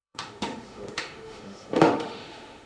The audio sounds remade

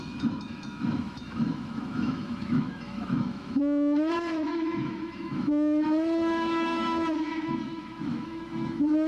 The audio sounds remade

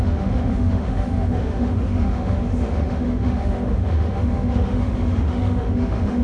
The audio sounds remade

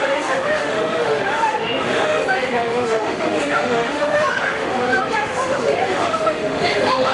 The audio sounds remade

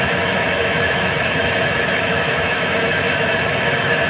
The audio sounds remade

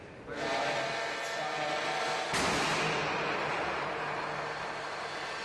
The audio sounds recorded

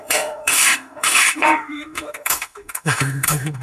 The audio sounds remade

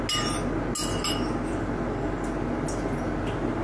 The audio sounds recorded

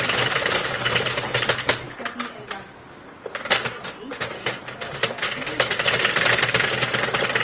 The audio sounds recorded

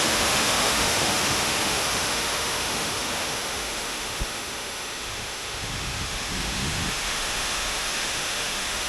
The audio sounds remade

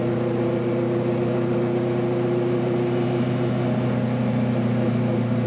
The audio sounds recorded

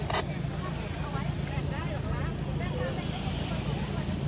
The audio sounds recorded